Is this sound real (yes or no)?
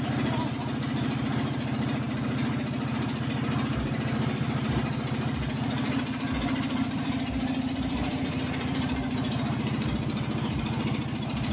no